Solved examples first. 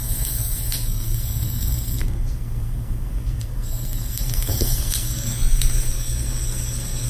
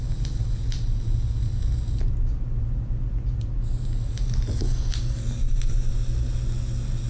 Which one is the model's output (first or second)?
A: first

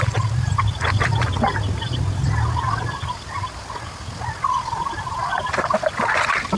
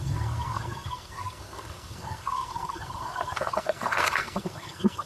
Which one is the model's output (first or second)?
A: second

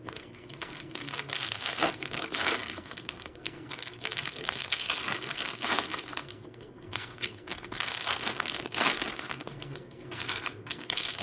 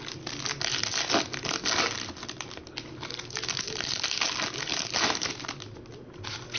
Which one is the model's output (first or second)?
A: first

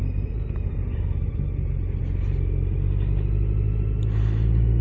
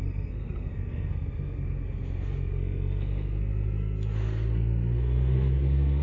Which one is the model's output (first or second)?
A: second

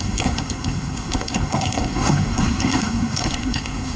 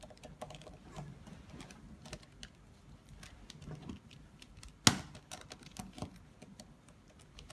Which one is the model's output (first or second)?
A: first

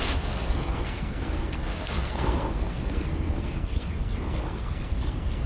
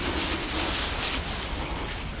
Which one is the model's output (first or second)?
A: first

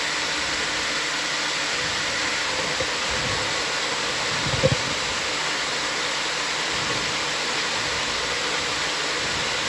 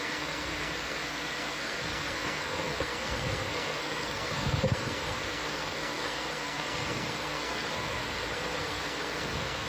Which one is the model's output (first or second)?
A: second